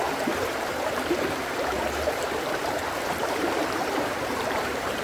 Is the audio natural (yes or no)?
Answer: no